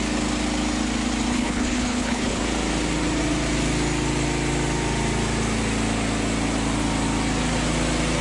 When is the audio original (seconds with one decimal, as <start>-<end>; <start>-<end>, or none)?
0.0-1.3; 2.4-8.2

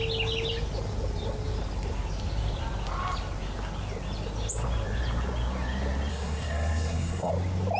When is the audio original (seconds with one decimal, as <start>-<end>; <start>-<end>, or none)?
0.0-6.1; 7.3-7.8

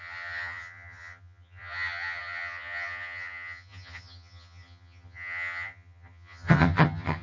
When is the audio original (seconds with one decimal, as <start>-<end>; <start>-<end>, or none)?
none